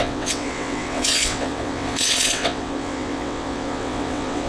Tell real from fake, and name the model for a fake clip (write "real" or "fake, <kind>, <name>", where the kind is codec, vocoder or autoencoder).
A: fake, vocoder, WaveNeXt